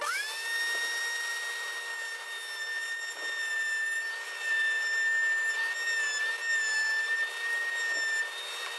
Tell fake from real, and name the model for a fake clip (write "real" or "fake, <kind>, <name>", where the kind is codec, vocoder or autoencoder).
real